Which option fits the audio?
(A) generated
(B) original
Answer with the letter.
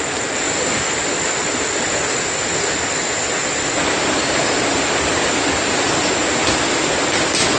B